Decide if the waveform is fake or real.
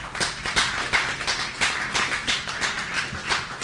real